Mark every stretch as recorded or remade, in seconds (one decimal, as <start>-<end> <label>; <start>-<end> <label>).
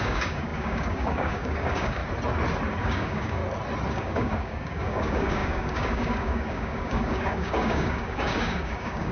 0.0-2.0 remade; 2.0-2.8 recorded; 2.8-3.4 remade; 3.4-3.9 recorded; 3.9-9.1 remade